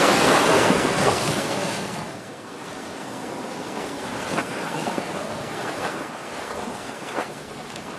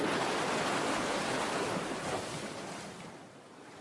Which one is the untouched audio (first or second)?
second